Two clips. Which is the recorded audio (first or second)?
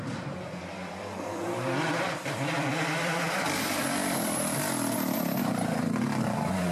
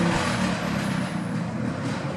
second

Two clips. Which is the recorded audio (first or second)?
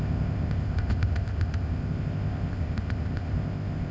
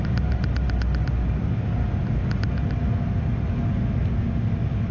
second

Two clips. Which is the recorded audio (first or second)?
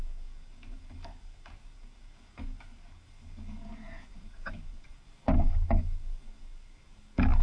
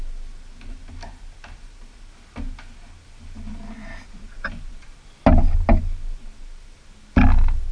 second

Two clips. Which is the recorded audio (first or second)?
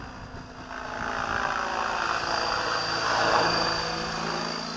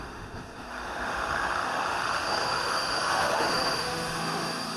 first